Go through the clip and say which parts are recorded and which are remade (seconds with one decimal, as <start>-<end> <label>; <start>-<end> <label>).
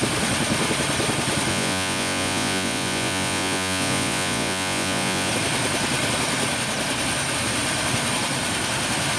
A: 0.0-1.5 recorded; 1.5-5.3 remade; 5.3-9.2 recorded